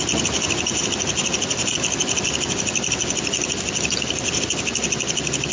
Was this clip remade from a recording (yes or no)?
no